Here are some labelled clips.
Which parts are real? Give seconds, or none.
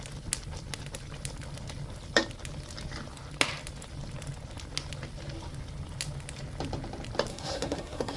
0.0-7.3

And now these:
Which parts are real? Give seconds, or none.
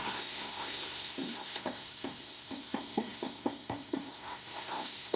none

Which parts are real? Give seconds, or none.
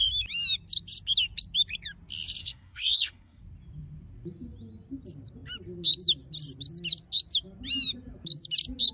0.0-2.4; 3.4-8.9